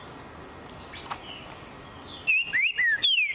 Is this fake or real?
real